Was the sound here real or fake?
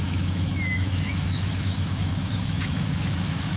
fake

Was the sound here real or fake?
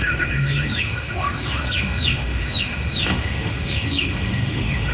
fake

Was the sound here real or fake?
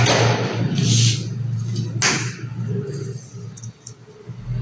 real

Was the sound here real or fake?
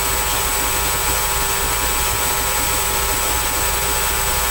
real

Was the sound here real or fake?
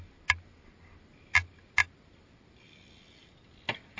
real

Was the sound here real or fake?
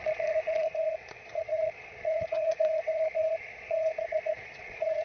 fake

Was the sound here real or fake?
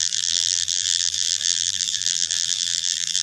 fake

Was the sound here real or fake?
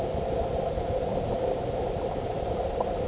real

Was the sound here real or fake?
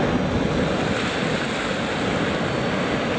real